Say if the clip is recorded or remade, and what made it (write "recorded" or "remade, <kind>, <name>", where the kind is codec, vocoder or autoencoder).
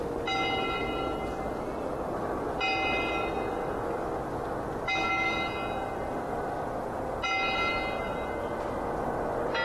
recorded